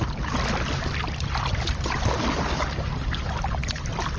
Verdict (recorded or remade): recorded